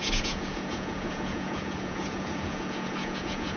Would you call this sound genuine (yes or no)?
no